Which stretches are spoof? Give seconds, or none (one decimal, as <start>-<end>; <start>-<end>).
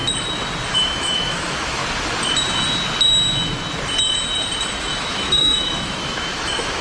0.7-1.8; 4.8-6.8